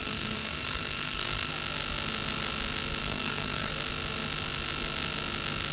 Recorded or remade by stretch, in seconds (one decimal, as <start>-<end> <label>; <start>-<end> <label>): 0.0-1.5 remade; 1.5-3.0 recorded; 3.0-3.7 remade; 3.7-5.7 recorded